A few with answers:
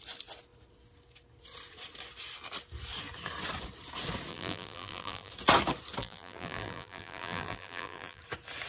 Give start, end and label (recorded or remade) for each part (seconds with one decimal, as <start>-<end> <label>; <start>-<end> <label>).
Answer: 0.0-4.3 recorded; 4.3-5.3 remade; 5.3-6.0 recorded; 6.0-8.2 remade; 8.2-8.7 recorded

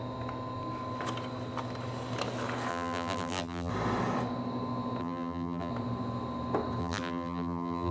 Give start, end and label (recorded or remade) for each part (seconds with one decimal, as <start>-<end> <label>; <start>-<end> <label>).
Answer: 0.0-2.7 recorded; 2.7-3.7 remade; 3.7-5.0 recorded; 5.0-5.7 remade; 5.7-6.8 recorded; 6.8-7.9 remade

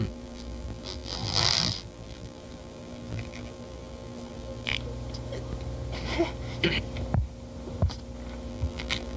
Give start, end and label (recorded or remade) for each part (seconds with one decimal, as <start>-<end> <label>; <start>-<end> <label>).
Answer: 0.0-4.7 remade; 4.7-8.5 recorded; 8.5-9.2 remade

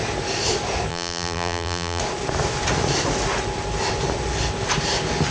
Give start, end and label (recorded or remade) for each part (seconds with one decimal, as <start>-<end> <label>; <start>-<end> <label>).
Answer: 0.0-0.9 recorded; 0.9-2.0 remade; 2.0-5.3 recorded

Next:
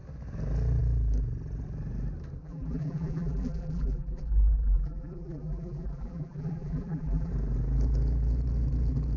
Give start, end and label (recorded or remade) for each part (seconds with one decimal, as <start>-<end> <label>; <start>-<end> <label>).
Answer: 0.0-2.4 recorded; 2.4-7.3 remade; 7.3-9.2 recorded